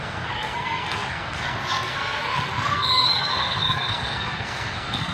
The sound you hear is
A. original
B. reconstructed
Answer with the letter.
B